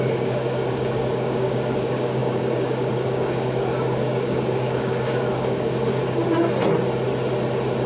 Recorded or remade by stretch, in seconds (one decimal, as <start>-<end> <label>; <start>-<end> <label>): 0.0-6.0 remade; 6.0-7.9 recorded